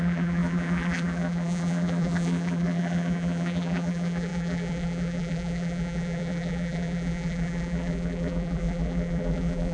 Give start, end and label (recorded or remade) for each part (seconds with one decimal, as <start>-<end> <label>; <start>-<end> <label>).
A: 0.0-9.7 remade